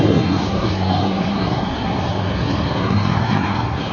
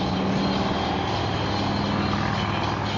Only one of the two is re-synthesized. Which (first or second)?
first